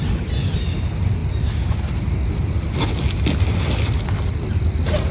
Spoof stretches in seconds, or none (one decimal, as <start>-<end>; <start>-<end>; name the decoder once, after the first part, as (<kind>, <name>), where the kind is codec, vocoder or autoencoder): none